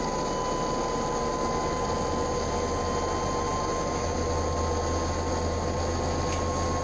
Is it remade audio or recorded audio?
recorded